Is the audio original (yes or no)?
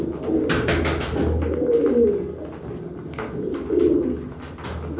yes